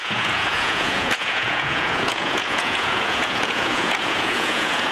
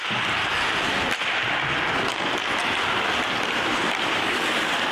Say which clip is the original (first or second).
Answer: second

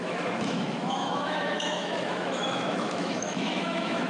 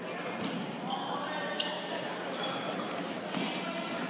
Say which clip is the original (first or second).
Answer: second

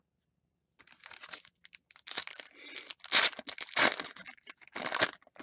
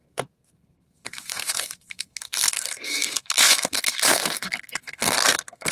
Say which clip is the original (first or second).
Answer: first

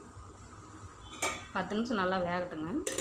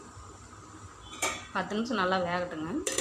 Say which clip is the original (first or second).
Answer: first